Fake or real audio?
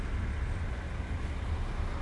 real